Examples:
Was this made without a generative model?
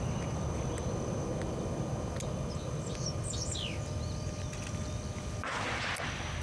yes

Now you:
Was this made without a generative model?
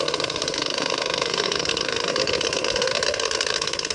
no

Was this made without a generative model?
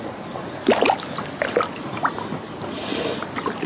yes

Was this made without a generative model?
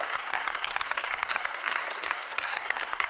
no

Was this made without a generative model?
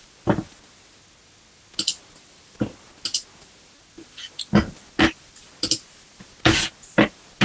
yes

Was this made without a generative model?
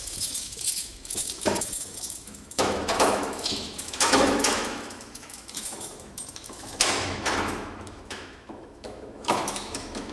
no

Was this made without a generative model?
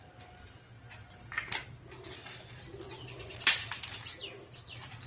yes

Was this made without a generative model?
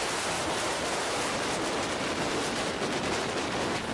yes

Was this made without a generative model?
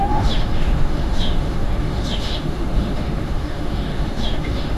no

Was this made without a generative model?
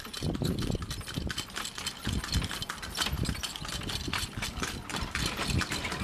yes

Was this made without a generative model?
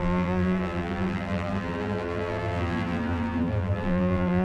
no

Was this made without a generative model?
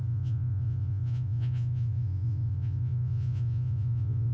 no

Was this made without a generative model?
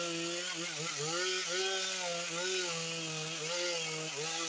yes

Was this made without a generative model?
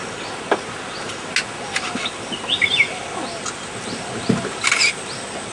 yes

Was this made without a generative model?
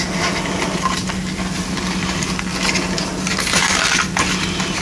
yes